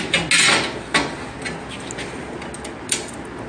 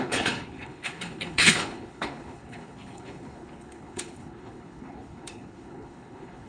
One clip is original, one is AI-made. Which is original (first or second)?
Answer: first